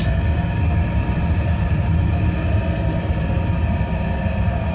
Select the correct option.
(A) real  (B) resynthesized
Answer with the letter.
A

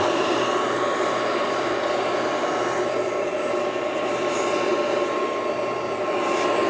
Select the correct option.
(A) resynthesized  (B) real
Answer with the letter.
B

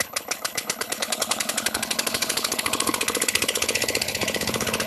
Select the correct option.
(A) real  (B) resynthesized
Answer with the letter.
B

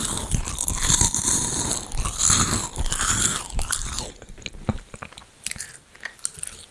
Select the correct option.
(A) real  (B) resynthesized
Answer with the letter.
A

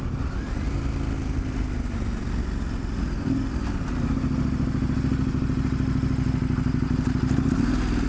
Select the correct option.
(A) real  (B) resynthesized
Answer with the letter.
A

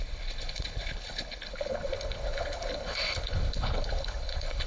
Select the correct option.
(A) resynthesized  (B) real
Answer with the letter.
A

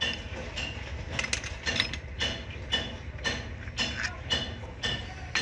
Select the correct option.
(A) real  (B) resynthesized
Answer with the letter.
A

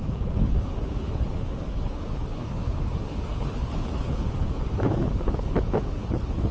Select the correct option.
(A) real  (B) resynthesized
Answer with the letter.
B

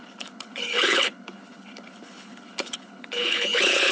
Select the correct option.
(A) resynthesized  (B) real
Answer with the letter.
A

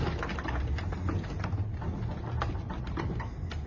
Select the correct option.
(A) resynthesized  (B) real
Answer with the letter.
B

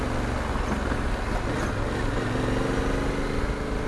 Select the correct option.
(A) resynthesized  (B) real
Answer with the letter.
B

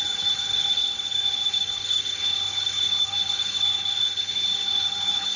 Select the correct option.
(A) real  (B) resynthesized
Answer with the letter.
B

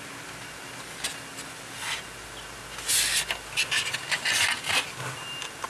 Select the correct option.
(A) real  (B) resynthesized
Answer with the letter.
A